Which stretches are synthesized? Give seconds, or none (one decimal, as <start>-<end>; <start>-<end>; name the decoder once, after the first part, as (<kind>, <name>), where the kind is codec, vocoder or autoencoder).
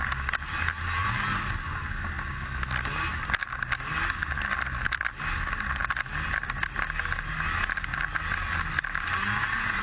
none